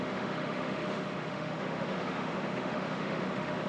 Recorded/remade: remade